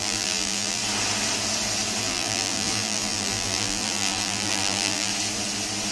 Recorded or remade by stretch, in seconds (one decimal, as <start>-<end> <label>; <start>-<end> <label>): 0.0-0.8 remade; 0.8-2.0 recorded; 2.0-5.1 remade; 5.1-5.9 recorded